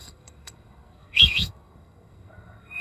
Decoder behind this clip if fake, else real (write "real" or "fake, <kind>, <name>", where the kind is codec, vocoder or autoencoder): fake, codec, SNAC